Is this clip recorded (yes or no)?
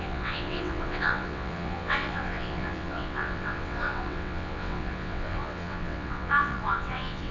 no